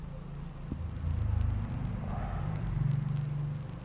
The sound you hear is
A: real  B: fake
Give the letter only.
A